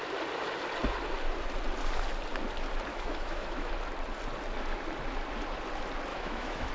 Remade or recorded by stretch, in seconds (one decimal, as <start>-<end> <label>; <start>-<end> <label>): 0.0-2.9 recorded; 2.9-3.7 remade; 3.7-6.1 recorded; 6.1-6.7 remade